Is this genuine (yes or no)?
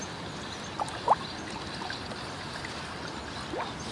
no